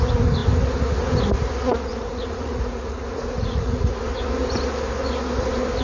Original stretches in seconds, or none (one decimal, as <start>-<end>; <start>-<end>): 0.0-1.9; 4.0-5.8